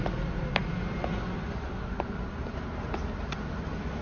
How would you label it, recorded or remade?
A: recorded